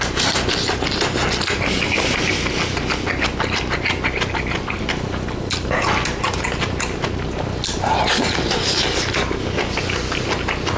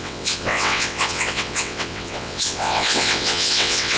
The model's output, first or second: second